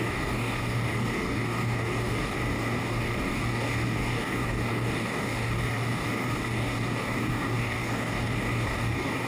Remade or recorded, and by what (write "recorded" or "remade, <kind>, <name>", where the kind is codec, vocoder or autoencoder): remade, codec, DAC